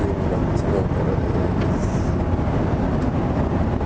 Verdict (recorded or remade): recorded